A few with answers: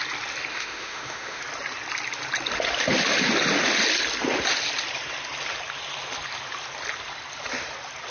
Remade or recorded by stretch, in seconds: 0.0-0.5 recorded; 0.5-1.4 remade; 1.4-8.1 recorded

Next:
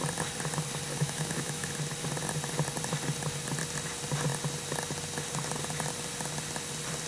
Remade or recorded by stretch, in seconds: 0.0-0.9 recorded; 0.9-1.7 remade; 1.7-7.1 recorded

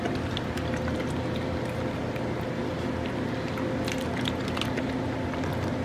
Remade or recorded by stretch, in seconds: 0.0-5.8 recorded